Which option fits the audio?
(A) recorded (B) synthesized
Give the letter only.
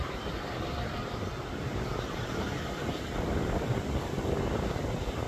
A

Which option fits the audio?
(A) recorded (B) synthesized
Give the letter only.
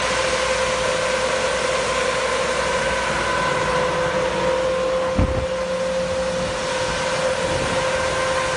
A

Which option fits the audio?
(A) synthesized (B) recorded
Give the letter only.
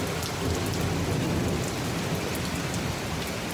B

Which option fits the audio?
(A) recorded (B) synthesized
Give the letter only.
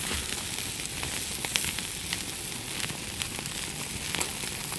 A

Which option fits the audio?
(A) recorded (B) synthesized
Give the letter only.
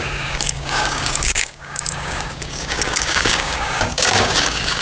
B